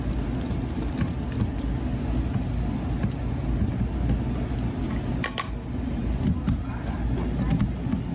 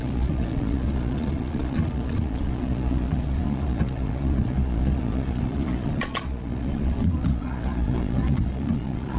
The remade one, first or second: second